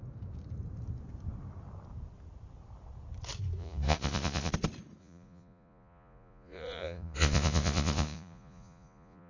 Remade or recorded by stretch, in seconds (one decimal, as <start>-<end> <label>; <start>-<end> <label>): 0.0-3.6 recorded; 3.6-4.5 remade; 4.5-5.0 recorded; 5.0-9.3 remade